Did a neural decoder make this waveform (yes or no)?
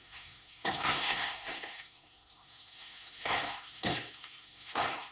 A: yes